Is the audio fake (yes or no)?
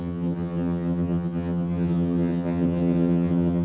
yes